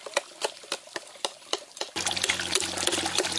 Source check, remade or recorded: recorded